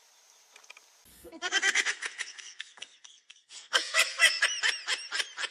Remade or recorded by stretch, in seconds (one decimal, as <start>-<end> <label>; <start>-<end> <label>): 0.0-1.1 recorded; 1.1-4.4 remade; 4.4-5.5 recorded